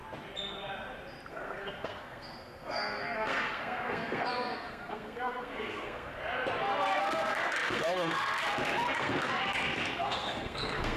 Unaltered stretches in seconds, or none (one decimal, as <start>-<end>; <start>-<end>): 0.0-1.3; 6.2-7.0